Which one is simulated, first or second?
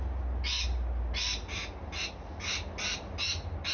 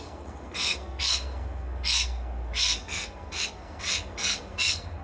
second